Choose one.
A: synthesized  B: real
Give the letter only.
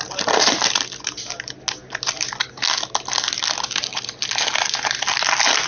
B